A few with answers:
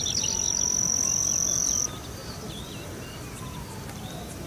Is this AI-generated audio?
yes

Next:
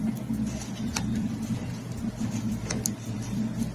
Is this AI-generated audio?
no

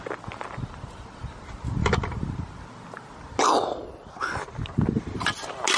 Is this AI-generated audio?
no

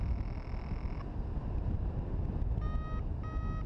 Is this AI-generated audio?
no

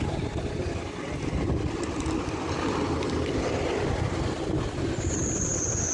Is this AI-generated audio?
no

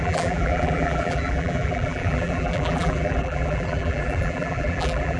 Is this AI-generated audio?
yes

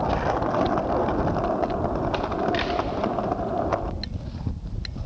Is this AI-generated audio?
no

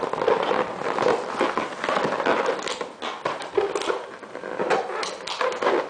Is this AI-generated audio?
no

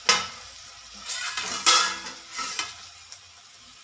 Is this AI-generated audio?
no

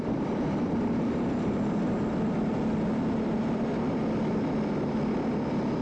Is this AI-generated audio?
no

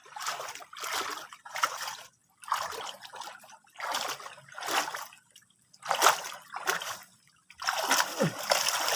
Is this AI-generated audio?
no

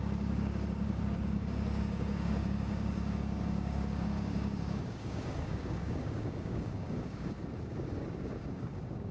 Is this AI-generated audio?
yes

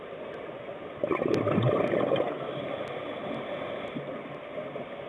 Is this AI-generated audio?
no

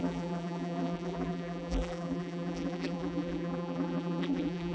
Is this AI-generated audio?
yes